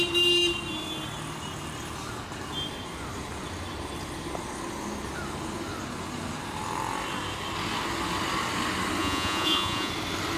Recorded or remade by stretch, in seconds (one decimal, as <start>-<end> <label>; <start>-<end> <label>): 0.0-9.0 recorded; 9.0-9.9 remade; 9.9-10.4 recorded